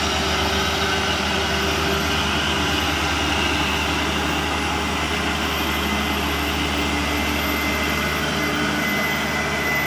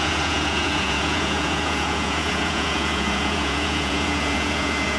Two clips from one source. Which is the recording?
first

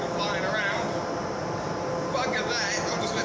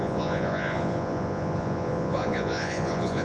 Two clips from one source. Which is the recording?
first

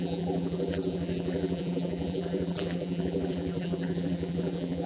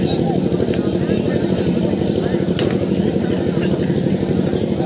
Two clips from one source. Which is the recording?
second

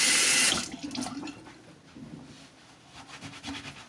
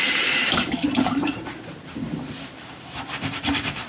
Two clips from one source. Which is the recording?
first